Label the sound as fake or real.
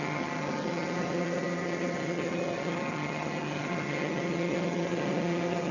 fake